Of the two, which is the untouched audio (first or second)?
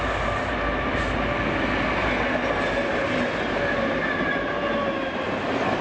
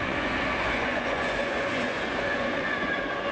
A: first